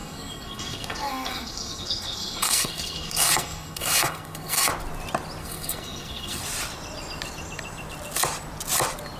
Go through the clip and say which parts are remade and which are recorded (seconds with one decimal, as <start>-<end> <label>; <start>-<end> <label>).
0.0-4.7 remade; 4.7-5.4 recorded; 5.4-6.4 remade; 6.4-9.2 recorded